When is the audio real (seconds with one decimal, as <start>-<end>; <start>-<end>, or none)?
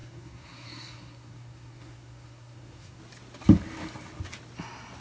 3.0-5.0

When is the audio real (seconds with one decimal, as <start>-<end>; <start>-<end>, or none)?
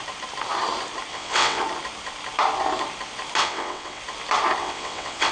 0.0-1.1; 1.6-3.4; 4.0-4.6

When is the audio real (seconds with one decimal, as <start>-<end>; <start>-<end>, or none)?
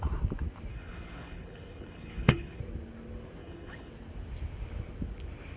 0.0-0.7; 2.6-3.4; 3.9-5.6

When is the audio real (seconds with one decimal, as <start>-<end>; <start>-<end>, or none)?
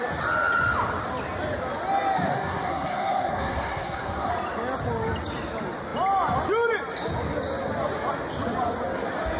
0.0-2.3; 4.3-9.4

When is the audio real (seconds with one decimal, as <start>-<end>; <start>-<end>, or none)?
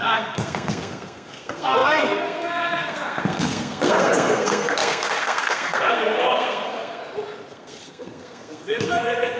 7.0-7.5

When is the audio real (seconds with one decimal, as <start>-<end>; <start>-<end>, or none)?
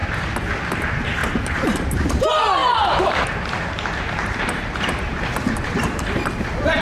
0.7-1.2; 1.8-2.6; 6.2-6.8